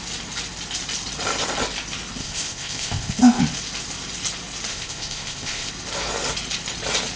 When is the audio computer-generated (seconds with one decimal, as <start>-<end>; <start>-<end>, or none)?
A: 2.2-3.4; 4.7-5.7